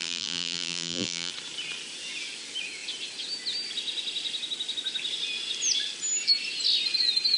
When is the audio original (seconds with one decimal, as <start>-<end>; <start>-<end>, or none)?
1.3-7.4